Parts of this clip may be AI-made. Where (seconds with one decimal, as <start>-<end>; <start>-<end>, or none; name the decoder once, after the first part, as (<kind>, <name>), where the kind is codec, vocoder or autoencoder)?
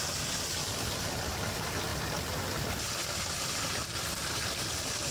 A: 1.9-5.1 (vocoder, BigVGAN v2)